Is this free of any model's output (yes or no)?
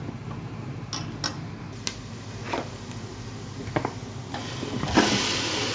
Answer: yes